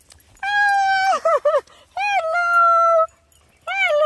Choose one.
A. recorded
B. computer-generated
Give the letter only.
A